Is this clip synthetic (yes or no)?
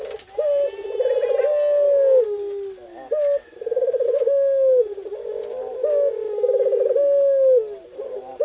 no